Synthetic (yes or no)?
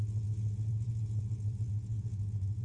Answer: yes